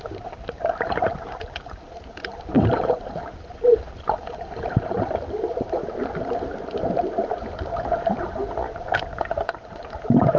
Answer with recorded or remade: remade